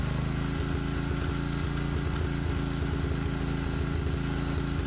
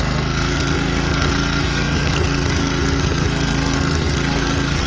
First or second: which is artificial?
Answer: second